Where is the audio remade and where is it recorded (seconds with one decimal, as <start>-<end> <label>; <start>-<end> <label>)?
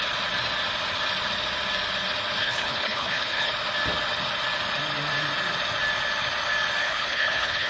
0.0-2.4 recorded; 2.4-3.5 remade; 3.5-6.8 recorded; 6.8-7.7 remade